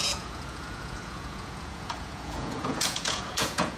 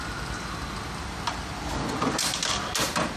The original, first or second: second